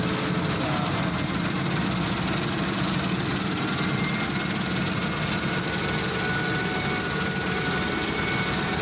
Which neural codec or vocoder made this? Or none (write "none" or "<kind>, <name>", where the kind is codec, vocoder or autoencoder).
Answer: none